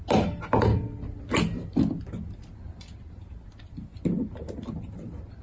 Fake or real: real